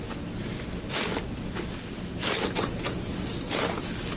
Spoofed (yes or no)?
no